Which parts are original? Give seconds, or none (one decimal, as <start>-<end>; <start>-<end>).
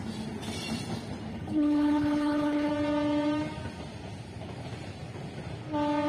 0.0-1.3; 2.7-6.1